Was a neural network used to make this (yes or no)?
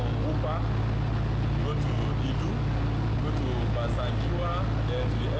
no